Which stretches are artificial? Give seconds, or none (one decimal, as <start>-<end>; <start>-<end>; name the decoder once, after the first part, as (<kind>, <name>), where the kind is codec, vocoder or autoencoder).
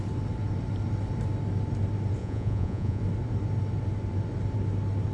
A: 2.2-3.0 (vocoder, Vocos)